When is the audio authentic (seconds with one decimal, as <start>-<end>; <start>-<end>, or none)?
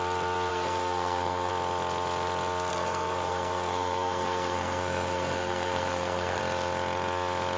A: 0.0-0.5; 1.5-2.7; 6.4-7.6